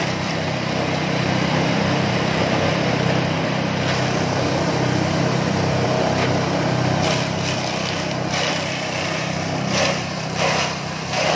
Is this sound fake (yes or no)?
yes